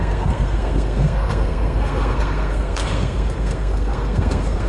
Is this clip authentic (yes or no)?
no